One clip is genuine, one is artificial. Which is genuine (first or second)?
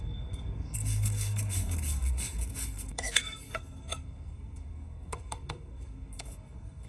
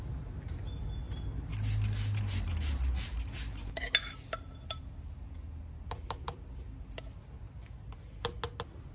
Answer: second